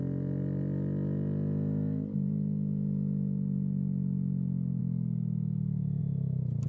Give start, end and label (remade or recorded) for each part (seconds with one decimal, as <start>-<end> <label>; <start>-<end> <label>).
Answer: 0.0-4.8 recorded; 4.8-6.0 remade; 6.0-6.7 recorded